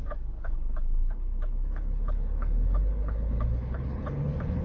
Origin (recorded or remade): remade